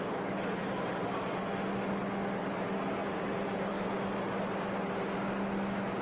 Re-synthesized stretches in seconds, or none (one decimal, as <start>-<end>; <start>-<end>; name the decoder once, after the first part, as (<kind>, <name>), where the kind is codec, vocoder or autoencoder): 3.0-3.9 (vocoder, BigVGAN v2)

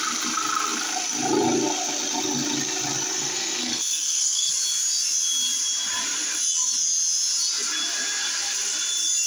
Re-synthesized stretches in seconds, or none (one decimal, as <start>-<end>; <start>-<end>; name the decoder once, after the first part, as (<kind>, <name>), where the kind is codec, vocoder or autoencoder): 3.1-4.5 (codec, SNAC)

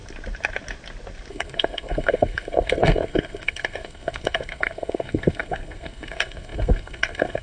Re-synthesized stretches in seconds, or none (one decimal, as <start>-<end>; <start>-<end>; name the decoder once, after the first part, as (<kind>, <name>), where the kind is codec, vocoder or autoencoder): 1.3-7.4 (codec, SNAC)

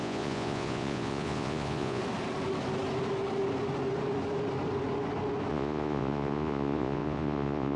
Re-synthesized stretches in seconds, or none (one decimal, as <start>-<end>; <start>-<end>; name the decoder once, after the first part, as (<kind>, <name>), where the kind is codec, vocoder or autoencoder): 0.0-2.0 (vocoder, Vocos); 5.5-7.8

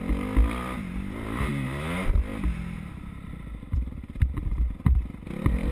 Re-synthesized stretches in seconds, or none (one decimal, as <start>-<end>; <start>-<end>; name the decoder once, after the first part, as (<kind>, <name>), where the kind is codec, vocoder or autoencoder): none

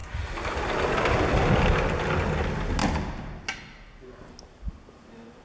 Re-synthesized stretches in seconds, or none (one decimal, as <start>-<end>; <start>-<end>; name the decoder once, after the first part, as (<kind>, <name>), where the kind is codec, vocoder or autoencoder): 0.0-1.5 (vocoder, BigVGAN v2)